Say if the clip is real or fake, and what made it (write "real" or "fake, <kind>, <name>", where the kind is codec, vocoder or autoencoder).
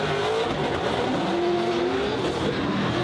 real